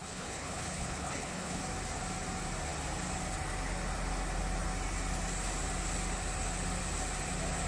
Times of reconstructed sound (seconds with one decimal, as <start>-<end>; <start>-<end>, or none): 0.0-1.6